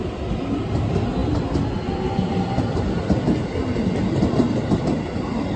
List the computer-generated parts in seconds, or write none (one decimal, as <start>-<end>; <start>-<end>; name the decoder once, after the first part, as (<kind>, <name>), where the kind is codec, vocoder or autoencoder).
none